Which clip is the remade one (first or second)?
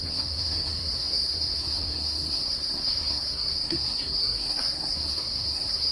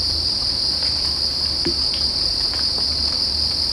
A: first